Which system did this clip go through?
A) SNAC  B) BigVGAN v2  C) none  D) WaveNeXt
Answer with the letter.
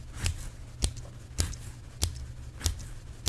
C